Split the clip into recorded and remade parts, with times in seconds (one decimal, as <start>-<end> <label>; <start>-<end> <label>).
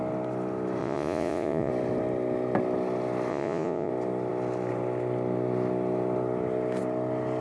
0.0-0.8 recorded; 0.8-1.7 remade; 1.7-3.3 recorded; 3.3-3.9 remade; 3.9-7.4 recorded